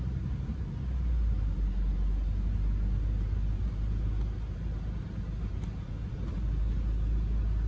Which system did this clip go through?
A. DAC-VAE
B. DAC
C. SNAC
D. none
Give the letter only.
D